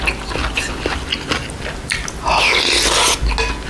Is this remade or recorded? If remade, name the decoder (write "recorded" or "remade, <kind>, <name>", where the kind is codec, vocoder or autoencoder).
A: recorded